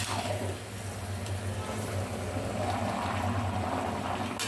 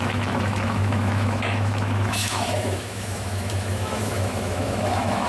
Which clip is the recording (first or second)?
first